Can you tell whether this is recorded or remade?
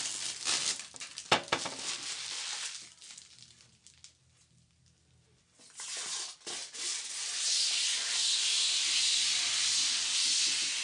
recorded